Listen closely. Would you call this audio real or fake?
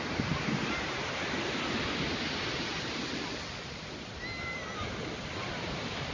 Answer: real